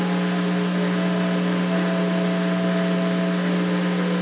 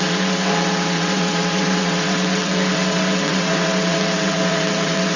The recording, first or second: first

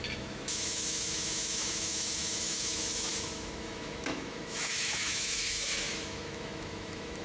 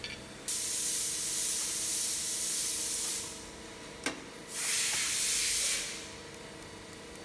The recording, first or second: second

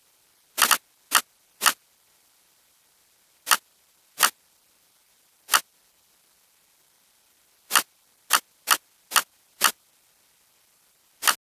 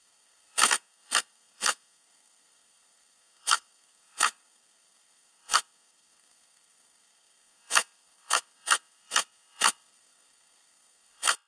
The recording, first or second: first